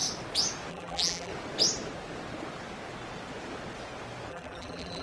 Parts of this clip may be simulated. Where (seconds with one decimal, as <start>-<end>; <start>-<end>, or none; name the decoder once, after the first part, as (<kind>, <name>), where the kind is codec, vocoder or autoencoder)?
0.7-1.3 (vocoder, BigVGAN v2); 4.3-5.0